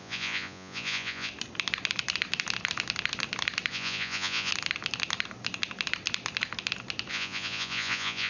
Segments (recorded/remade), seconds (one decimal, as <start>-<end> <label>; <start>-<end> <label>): 0.0-1.3 remade; 1.3-3.7 recorded; 3.7-4.5 remade; 4.5-7.1 recorded; 7.1-8.3 remade